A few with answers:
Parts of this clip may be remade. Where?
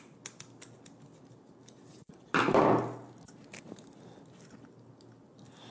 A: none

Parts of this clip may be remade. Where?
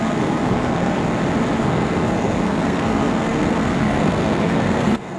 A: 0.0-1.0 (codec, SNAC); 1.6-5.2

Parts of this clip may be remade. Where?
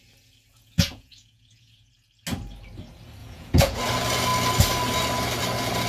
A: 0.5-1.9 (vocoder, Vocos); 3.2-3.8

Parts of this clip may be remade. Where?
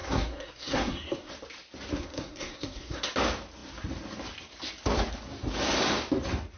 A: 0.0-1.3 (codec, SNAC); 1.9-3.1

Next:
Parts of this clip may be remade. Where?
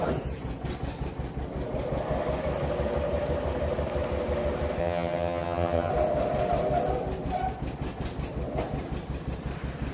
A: 4.8-5.9 (vocoder, HiFi-GAN)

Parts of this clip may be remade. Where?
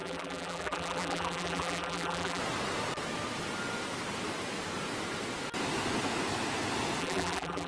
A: 0.0-2.4 (vocoder, BigVGAN v2); 7.0-7.7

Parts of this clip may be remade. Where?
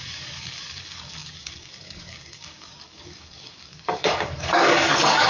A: 0.0-5.3 (codec, DAC)